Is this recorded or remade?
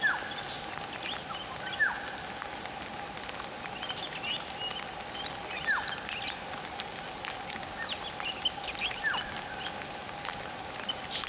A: recorded